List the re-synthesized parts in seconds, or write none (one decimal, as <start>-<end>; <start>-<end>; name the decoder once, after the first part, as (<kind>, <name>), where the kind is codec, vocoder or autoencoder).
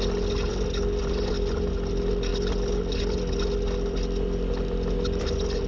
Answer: none